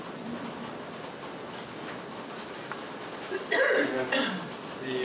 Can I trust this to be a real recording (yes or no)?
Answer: yes